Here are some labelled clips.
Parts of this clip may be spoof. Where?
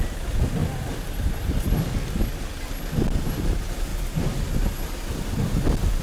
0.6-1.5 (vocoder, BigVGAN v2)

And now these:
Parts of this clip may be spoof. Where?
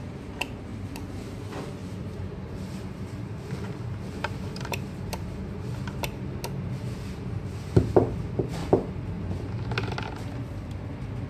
0.7-1.4 (vocoder, BigVGAN v2); 1.8-5.5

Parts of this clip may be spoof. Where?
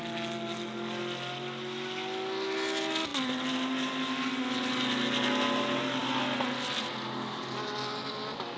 none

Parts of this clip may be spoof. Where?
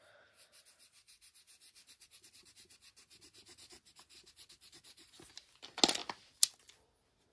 none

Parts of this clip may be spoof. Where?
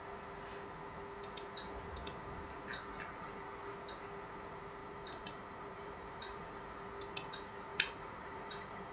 4.8-6.6 (vocoder, BigVGAN v2); 7.7-8.9